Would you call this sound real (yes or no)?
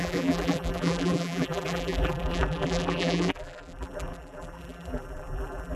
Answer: no